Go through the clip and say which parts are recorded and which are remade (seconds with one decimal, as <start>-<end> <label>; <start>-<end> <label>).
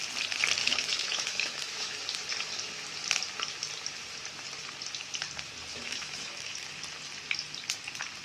0.0-0.6 recorded; 0.6-2.0 remade; 2.0-5.7 recorded; 5.7-6.5 remade; 6.5-8.2 recorded